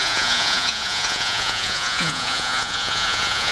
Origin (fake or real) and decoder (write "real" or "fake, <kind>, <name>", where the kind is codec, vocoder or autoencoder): fake, vocoder, Vocos